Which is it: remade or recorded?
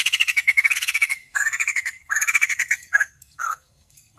remade